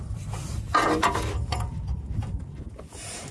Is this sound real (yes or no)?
no